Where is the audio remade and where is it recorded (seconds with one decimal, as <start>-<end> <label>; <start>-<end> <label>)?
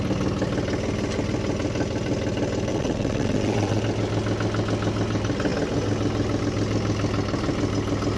0.0-2.7 recorded; 2.7-3.8 remade; 3.8-8.2 recorded